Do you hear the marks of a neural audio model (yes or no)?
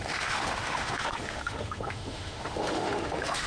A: yes